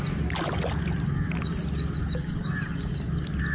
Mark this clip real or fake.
real